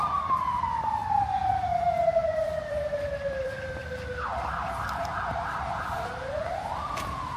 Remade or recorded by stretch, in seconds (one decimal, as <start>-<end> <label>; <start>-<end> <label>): 0.0-2.2 recorded; 2.2-3.8 remade; 3.8-4.3 recorded; 4.3-7.4 remade